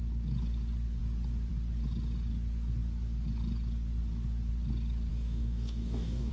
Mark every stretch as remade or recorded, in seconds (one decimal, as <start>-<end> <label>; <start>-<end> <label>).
0.0-5.1 recorded; 5.1-6.3 remade